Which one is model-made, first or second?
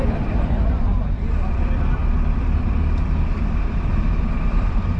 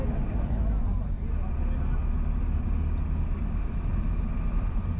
first